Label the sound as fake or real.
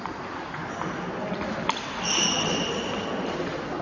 real